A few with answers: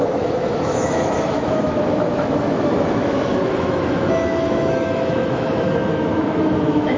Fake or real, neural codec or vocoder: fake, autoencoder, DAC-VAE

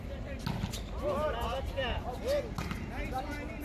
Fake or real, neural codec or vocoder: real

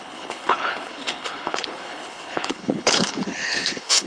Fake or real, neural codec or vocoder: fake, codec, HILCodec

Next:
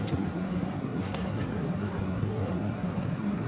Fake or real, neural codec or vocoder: fake, codec, SNAC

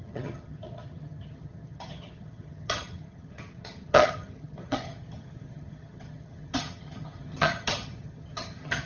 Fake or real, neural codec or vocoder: fake, vocoder, HiFi-GAN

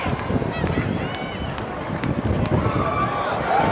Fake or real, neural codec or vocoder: real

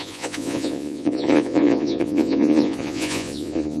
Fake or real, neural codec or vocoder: fake, vocoder, Vocos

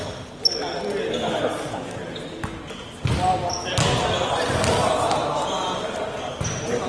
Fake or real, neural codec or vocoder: real